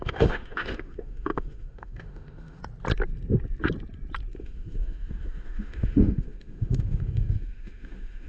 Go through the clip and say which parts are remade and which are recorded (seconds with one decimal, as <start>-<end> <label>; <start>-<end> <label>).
0.0-2.6 remade; 2.6-4.4 recorded; 4.4-8.3 remade